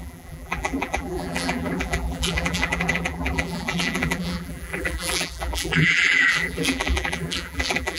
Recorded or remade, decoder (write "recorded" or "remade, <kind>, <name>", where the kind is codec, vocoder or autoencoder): remade, vocoder, BigVGAN v2